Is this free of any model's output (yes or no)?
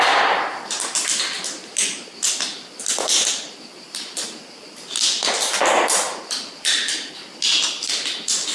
yes